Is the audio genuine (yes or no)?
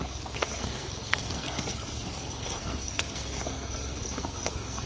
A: no